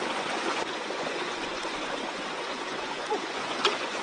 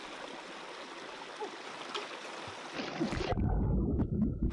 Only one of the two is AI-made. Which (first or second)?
first